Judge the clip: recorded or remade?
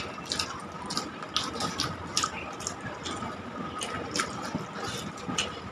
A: recorded